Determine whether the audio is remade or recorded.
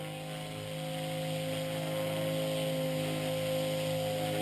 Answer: recorded